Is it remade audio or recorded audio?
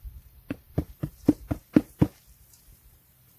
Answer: remade